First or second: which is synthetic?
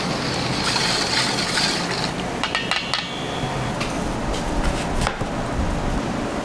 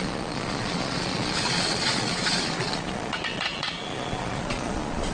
second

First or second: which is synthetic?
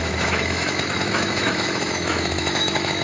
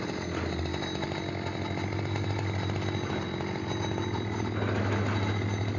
first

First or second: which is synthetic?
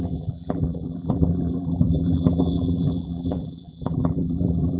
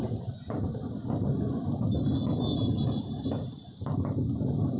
first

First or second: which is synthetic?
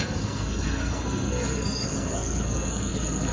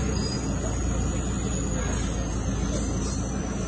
first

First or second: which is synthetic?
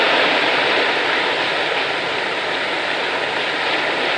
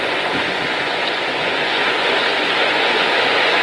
second